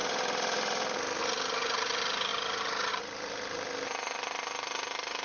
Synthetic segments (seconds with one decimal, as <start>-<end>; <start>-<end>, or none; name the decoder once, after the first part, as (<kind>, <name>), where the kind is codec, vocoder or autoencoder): none